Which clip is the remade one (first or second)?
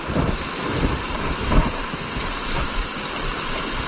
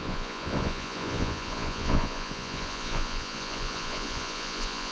second